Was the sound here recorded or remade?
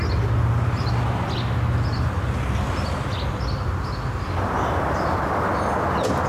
recorded